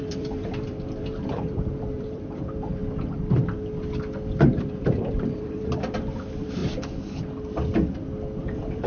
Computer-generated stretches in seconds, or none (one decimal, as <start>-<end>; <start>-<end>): 0.0-2.8; 4.4-6.6; 8.4-8.9